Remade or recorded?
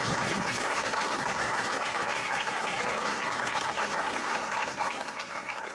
remade